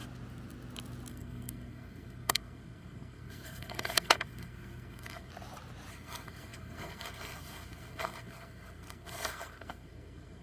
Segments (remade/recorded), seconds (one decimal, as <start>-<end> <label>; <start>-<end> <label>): 0.0-1.1 recorded; 1.1-5.3 remade; 5.3-5.9 recorded; 5.9-10.4 remade